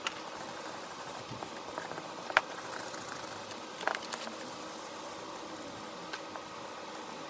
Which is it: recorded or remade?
recorded